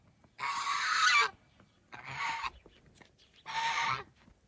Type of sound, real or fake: real